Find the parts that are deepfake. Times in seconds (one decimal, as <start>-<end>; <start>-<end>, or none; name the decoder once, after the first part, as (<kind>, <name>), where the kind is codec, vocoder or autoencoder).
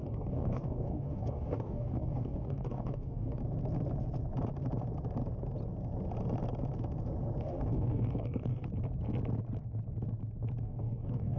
0.0-3.4 (codec, DAC); 7.4-8.7; 10.6-11.4